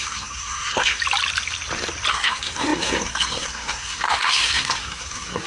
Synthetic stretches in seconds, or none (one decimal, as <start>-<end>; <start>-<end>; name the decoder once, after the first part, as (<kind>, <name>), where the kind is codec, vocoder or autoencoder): 0.0-1.0 (codec, SNAC); 2.1-5.5